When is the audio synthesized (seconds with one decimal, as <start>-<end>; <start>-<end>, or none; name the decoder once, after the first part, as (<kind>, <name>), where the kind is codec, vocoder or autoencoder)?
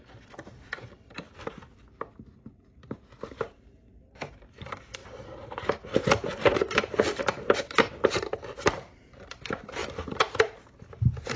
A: 0.0-11.4 (vocoder, BigVGAN v2)